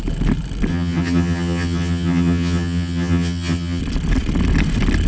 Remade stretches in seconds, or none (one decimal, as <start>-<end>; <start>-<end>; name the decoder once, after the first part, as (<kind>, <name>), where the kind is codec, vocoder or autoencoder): 0.7-3.8 (vocoder, HiFi-GAN)